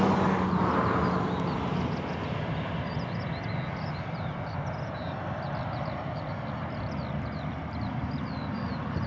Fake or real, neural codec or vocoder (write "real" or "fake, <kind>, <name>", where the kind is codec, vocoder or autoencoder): real